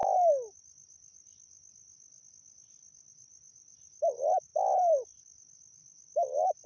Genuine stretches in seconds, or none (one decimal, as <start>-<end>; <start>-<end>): 0.0-6.7